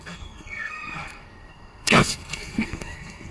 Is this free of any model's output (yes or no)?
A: no